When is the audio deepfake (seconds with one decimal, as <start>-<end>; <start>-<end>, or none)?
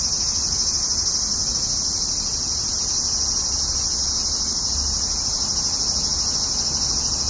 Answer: none